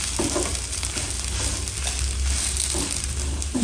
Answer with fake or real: real